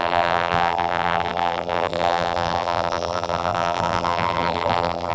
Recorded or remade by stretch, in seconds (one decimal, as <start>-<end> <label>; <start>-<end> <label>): 0.0-5.1 remade